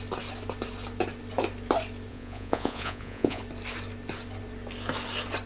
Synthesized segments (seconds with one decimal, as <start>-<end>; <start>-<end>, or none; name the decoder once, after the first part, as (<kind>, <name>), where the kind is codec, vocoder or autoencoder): 2.1-3.4 (vocoder, Vocos)